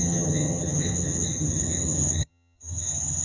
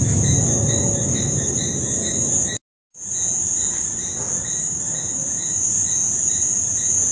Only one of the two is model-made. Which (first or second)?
first